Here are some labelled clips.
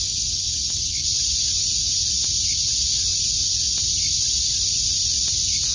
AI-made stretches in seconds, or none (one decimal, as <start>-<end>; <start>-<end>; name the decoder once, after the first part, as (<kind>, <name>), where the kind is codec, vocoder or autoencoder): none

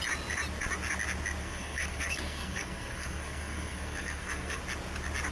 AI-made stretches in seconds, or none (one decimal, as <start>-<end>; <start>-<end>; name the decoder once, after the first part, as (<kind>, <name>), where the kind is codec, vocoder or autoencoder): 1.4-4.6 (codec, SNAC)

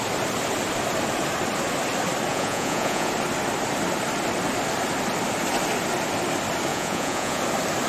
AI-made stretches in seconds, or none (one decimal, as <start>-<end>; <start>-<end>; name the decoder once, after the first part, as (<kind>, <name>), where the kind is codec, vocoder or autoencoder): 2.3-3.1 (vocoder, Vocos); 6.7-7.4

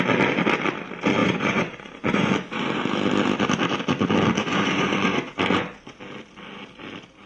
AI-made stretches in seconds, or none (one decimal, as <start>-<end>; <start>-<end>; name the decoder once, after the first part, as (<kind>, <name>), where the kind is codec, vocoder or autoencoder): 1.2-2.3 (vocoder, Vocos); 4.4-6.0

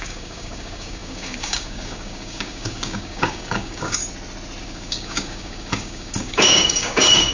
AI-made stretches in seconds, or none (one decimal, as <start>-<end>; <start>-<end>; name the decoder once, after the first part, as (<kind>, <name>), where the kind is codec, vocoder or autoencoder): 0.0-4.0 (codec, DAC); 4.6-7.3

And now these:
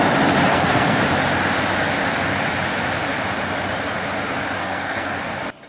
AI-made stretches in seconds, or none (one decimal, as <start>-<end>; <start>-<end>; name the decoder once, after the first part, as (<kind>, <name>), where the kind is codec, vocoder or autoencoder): 0.5-1.0 (codec, SNAC); 4.6-5.2

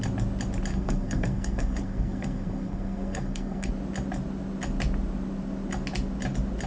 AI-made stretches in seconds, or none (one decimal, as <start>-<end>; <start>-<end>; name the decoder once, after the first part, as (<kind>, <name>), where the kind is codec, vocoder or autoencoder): 0.7-3.7 (codec, SNAC)